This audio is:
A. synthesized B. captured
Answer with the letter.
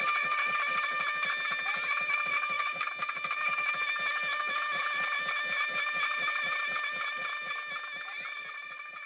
B